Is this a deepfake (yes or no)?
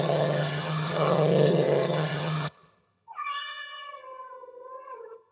yes